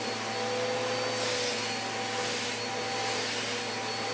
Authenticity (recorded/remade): recorded